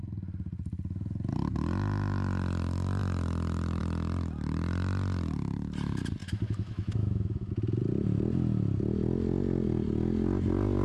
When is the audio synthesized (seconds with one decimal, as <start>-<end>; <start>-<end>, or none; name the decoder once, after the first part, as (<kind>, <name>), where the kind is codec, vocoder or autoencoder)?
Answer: 6.2-7.5 (autoencoder, DAC-VAE)